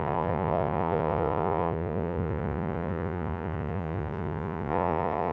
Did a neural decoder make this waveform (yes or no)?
yes